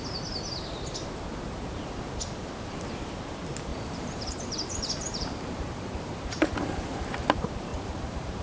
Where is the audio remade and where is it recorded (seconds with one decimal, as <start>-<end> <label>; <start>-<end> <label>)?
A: 0.0-3.7 recorded; 3.7-7.1 remade; 7.1-7.7 recorded; 7.7-8.4 remade